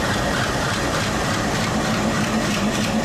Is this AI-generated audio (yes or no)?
yes